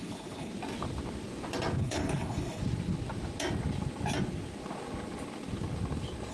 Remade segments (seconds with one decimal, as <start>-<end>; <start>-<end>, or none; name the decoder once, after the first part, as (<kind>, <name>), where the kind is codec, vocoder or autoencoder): 0.0-0.5 (codec, HILCodec); 1.8-2.6